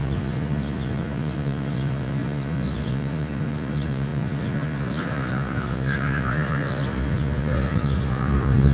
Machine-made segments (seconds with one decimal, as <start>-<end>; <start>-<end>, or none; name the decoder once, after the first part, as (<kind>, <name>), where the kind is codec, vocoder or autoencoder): 0.0-8.7 (vocoder, Vocos)